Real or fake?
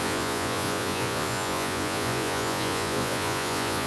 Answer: fake